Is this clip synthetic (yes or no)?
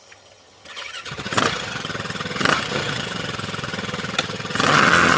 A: yes